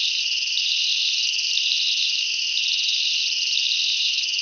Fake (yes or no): yes